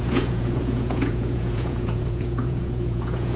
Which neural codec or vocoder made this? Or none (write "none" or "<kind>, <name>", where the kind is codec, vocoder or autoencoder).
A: vocoder, Vocos